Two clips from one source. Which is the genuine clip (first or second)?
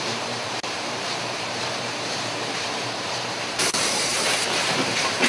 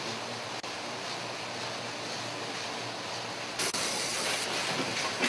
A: second